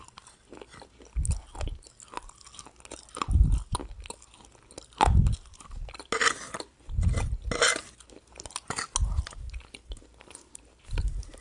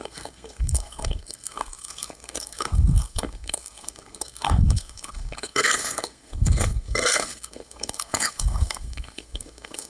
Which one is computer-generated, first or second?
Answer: second